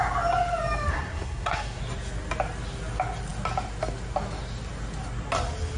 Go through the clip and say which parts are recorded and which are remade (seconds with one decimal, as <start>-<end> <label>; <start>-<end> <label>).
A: 0.0-0.9 recorded; 0.9-1.8 remade; 1.8-5.8 recorded